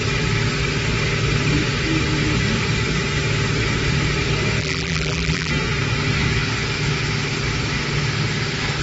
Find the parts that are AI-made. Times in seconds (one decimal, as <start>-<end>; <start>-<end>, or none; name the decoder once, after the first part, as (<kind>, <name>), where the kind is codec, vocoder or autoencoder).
4.6-5.5 (vocoder, BigVGAN v2)